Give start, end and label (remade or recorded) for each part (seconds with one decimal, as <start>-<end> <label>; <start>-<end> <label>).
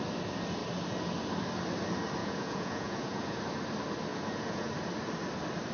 0.0-2.2 recorded; 2.2-3.4 remade; 3.4-4.1 recorded; 4.1-4.7 remade; 4.7-5.7 recorded